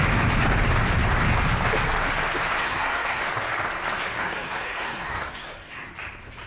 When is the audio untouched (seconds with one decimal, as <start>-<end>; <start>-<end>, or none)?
0.0-2.6; 3.2-4.2; 5.9-6.5